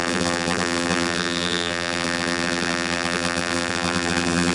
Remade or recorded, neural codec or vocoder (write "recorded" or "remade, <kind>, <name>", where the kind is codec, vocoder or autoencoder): remade, vocoder, BigVGAN v2